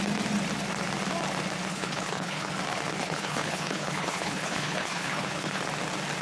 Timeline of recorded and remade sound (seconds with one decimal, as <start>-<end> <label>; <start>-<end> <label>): 0.0-1.7 recorded; 1.7-2.5 remade; 2.5-3.0 recorded; 3.0-5.6 remade; 5.6-6.2 recorded